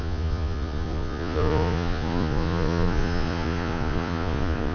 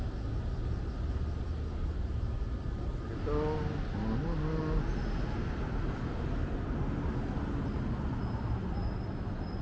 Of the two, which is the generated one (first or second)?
first